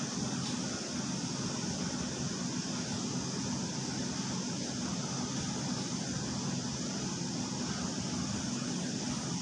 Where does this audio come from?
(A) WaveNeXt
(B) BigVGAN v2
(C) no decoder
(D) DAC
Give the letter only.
C